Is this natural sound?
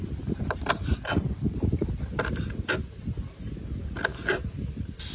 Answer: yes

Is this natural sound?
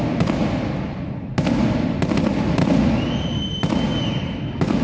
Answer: yes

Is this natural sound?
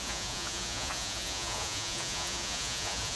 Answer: no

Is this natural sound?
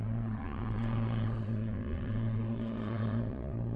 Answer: no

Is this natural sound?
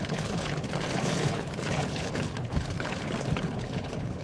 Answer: no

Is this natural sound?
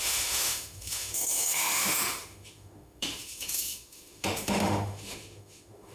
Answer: no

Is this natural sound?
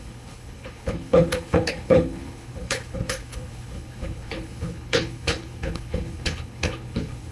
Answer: no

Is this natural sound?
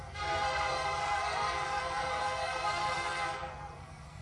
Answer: no